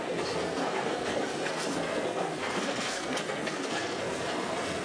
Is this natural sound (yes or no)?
no